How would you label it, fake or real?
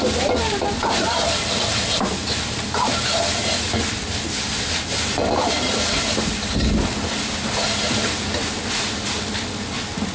real